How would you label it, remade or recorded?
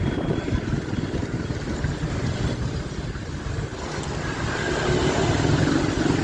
recorded